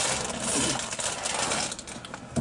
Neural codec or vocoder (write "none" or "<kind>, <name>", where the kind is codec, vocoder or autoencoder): none